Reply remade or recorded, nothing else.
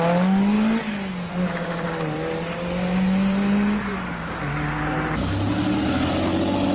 recorded